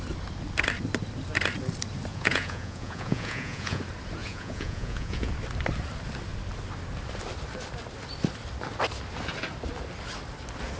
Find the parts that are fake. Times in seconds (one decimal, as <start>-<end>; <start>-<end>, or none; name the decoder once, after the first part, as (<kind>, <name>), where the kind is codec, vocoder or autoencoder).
2.1-3.8 (vocoder, Vocos); 4.2-5.3